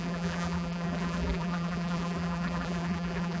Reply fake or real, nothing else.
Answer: fake